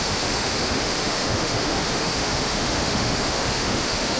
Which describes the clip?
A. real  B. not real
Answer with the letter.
B